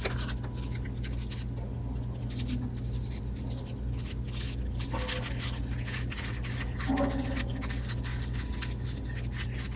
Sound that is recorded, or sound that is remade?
recorded